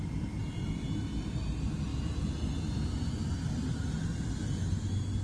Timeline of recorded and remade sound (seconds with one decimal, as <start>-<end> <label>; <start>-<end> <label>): 0.0-5.2 recorded